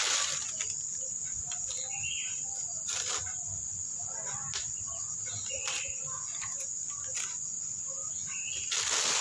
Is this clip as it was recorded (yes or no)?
yes